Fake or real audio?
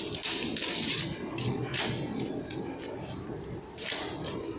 real